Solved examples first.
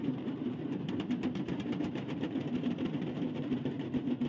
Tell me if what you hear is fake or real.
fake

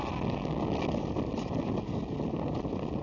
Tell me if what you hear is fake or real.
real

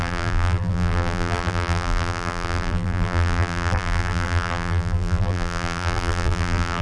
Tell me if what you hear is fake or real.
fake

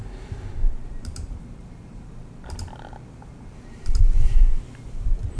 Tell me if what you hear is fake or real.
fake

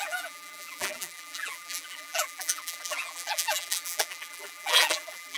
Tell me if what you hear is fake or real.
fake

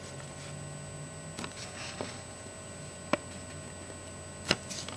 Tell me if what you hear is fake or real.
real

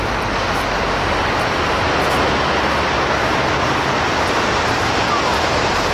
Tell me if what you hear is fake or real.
real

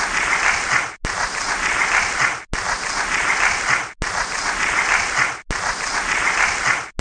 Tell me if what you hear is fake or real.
real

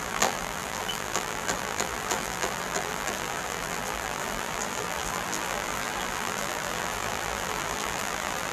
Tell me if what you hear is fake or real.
fake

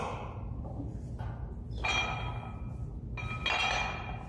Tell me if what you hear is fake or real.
real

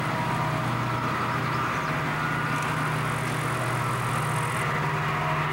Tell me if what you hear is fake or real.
real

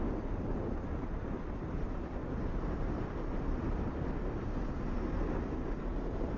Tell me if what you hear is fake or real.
real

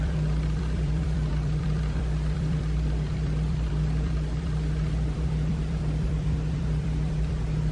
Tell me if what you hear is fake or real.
fake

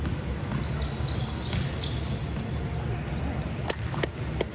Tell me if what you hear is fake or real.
real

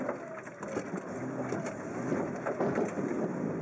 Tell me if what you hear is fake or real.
real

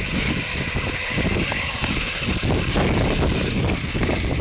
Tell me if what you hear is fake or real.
real